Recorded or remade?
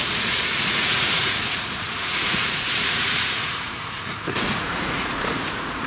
remade